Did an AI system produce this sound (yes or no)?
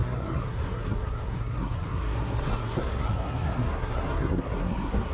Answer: yes